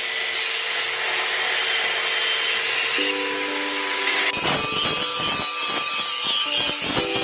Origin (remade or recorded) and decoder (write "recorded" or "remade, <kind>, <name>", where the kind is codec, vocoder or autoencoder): recorded